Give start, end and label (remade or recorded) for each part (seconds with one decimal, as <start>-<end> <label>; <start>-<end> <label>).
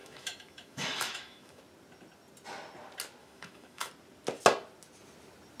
0.0-1.6 remade; 1.6-3.2 recorded; 3.2-3.9 remade; 3.9-5.6 recorded